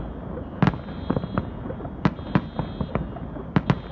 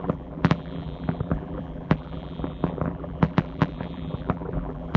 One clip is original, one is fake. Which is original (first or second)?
first